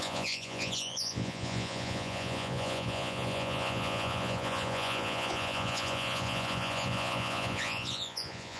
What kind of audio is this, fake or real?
fake